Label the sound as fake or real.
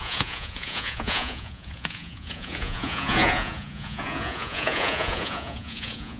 fake